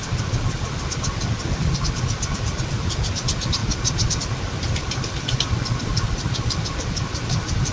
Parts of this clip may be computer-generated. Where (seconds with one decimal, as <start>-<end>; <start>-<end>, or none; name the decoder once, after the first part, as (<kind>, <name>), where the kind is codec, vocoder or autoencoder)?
none